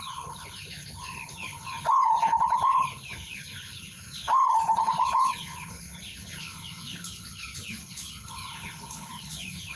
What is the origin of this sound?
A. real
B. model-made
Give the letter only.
B